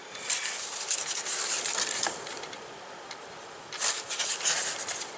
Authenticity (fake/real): real